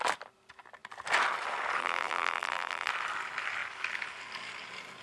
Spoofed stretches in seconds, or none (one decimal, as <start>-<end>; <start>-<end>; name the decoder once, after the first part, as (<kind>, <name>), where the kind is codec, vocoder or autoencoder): 1.8-2.9 (vocoder, BigVGAN v2)